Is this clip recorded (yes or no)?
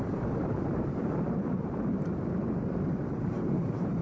no